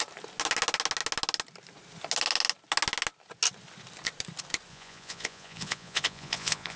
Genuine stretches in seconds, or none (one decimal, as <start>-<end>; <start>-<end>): 0.0-4.7